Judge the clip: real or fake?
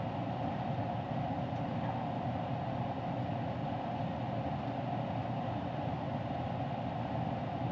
real